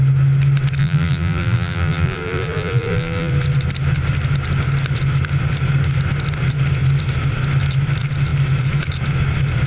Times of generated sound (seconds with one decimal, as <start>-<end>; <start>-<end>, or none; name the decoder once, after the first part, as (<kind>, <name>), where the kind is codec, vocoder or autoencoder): 0.8-3.3 (vocoder, BigVGAN v2)